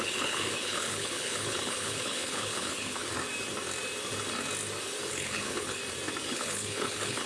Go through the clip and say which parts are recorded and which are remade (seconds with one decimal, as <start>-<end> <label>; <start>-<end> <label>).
0.0-3.0 remade; 3.0-5.1 recorded; 5.1-5.8 remade; 5.8-6.3 recorded; 6.3-7.3 remade